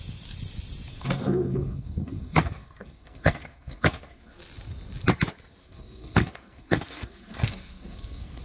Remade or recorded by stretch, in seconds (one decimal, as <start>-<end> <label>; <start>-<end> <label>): 0.0-0.9 recorded; 0.9-4.4 remade; 4.4-5.6 recorded; 5.6-8.4 remade